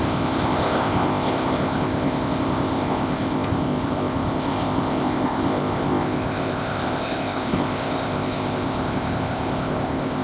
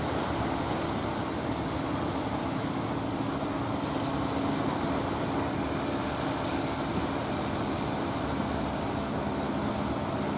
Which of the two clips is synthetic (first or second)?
first